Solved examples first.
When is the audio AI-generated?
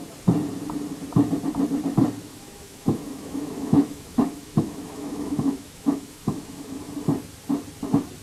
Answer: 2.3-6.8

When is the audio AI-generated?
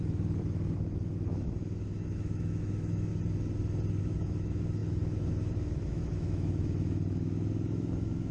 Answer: 0.0-3.1; 4.0-8.3